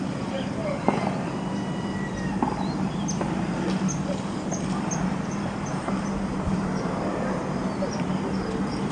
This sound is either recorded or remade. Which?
remade